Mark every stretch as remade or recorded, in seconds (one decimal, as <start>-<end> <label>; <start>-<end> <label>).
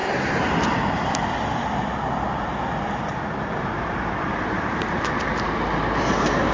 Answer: 0.0-3.6 recorded; 3.6-6.5 remade